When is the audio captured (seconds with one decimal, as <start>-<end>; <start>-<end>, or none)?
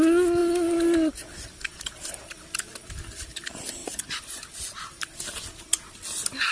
0.0-6.5